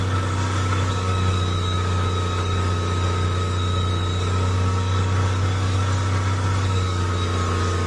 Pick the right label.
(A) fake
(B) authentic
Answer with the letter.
A